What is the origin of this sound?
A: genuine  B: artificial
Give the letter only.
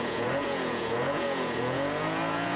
B